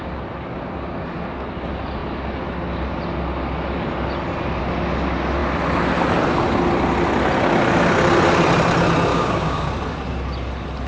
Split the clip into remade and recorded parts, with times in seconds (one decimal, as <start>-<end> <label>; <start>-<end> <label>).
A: 0.0-9.1 recorded; 9.1-9.7 remade; 9.7-10.9 recorded